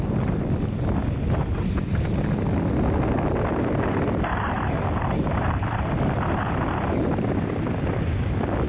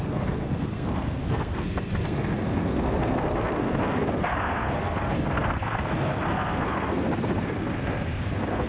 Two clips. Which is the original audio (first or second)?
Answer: first